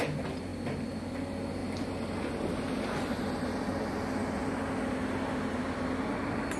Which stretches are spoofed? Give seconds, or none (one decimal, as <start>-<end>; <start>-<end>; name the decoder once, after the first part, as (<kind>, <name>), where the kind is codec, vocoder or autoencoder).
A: none